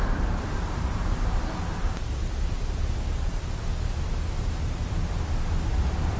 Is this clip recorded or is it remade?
recorded